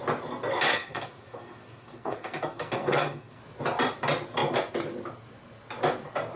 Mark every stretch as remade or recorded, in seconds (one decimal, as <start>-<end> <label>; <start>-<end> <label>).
0.0-0.7 recorded; 0.7-3.4 remade; 3.4-6.4 recorded